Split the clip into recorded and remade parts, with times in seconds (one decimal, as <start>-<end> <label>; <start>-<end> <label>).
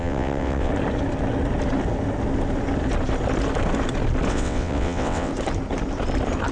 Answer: 0.0-0.7 remade; 0.7-4.3 recorded; 4.3-5.3 remade; 5.3-6.5 recorded